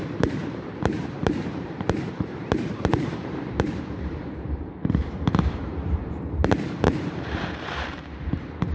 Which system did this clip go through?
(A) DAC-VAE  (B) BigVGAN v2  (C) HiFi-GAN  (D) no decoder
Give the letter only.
B